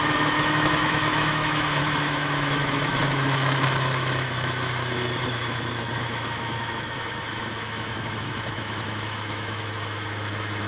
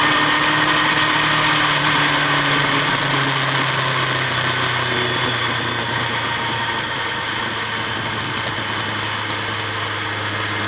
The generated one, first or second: first